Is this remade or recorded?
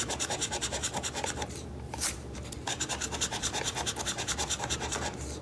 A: remade